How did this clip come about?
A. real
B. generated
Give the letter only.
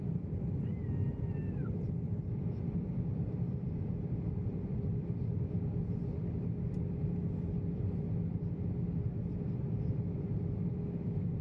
B